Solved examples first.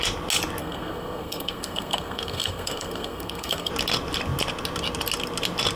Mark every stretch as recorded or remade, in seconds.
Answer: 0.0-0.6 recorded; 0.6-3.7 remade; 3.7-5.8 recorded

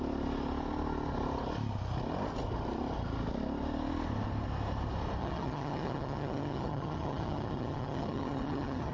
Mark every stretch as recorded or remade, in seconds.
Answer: 0.0-5.2 recorded; 5.2-8.9 remade

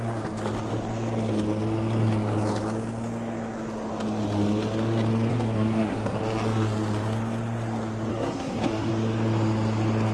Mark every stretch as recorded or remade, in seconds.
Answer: 0.0-5.3 recorded; 5.3-6.2 remade; 6.2-8.1 recorded; 8.1-8.9 remade; 8.9-10.1 recorded

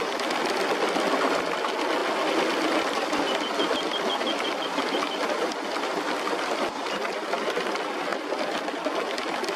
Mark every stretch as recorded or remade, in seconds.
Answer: 0.0-9.6 recorded

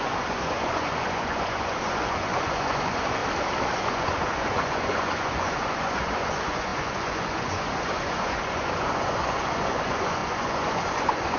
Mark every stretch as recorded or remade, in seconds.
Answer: 0.0-3.2 remade; 3.2-3.8 recorded; 3.8-11.4 remade

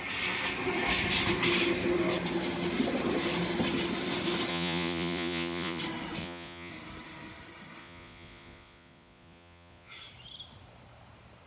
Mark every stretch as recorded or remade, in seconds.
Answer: 0.0-4.5 recorded; 4.5-5.8 remade; 5.8-6.2 recorded; 6.2-6.7 remade; 6.7-7.8 recorded; 7.8-9.9 remade; 9.9-11.5 recorded

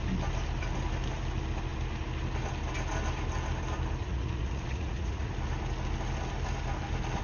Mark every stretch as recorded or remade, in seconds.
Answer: 0.0-4.0 recorded; 4.0-5.3 remade; 5.3-7.2 recorded